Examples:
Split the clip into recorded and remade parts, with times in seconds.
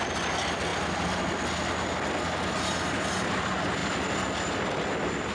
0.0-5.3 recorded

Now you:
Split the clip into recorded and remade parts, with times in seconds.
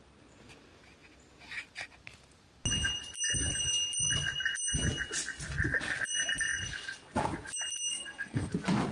0.0-7.9 recorded; 7.9-8.5 remade; 8.5-8.9 recorded